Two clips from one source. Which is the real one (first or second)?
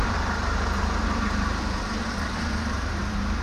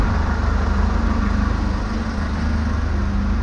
second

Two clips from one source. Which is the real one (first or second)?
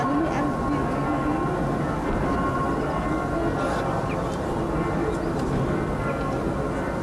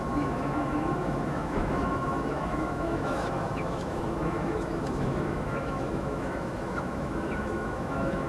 first